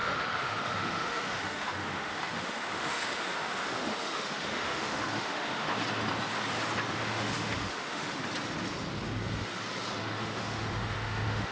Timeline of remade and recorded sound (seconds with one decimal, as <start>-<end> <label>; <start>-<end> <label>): 0.0-5.7 remade; 5.7-6.9 recorded; 6.9-8.2 remade; 8.2-10.0 recorded; 10.0-11.5 remade